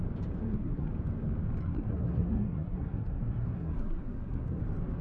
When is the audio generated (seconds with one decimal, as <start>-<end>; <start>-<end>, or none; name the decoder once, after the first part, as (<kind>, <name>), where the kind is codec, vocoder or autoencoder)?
0.4-0.9 (codec, SNAC); 1.6-4.6

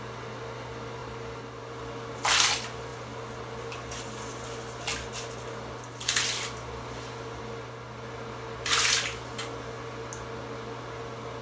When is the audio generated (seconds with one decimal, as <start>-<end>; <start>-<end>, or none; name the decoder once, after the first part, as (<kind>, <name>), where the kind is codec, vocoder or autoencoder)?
none

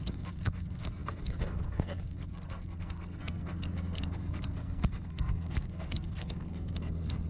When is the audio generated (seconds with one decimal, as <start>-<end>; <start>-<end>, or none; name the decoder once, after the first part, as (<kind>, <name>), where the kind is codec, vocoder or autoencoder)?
0.0-7.3 (codec, SNAC)

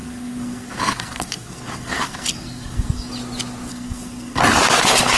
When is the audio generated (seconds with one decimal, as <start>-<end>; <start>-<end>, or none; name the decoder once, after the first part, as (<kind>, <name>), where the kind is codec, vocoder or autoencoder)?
0.0-3.1 (codec, SNAC); 3.7-4.4

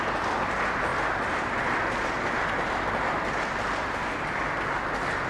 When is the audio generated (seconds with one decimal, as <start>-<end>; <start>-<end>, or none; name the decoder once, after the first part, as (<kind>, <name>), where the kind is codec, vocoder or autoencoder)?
none

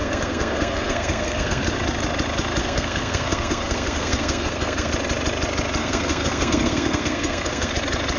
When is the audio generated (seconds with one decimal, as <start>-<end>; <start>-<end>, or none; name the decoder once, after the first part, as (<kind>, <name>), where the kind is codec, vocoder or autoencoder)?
0.0-1.6 (codec, SNAC); 2.6-4.9; 5.8-7.7

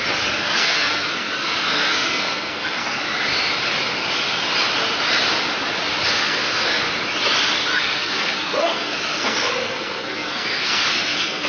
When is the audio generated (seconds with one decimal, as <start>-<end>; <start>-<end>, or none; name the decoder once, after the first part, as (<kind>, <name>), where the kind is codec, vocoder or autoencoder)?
0.4-3.0 (codec, SNAC); 6.1-6.8; 7.7-11.5

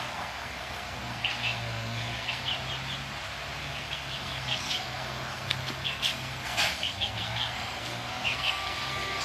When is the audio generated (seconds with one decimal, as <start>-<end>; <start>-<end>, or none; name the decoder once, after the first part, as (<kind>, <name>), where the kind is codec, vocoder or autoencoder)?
0.0-2.5 (codec, SNAC); 3.6-9.2